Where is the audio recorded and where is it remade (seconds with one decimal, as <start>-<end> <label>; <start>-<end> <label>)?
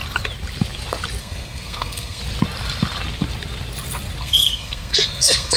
0.0-1.2 recorded; 1.2-2.2 remade; 2.2-4.2 recorded; 4.2-5.6 remade